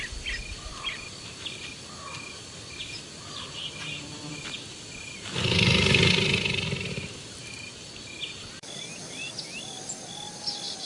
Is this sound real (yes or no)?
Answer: yes